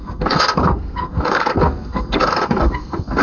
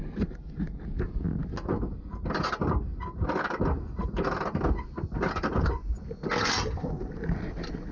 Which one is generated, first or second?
first